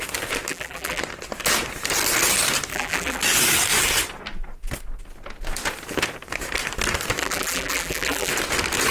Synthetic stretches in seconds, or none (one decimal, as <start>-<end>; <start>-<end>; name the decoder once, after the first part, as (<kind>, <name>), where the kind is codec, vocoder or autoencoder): 0.5-1.0 (vocoder, BigVGAN v2); 2.7-3.2; 7.2-8.3